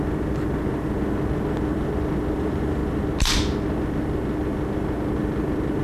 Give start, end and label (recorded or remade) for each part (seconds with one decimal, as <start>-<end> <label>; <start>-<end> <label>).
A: 0.0-2.4 recorded; 2.4-2.8 remade; 2.8-5.8 recorded